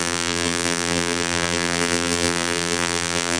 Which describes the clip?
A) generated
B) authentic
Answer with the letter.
A